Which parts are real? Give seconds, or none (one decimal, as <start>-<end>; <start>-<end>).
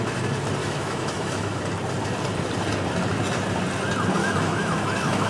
0.0-0.6; 1.6-4.2